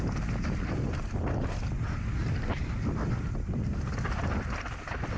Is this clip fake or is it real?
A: real